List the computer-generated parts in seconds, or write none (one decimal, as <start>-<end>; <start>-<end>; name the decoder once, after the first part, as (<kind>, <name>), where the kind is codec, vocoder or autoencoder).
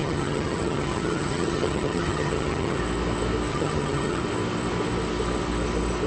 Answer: 0.0-2.8 (vocoder, HiFi-GAN); 3.5-4.2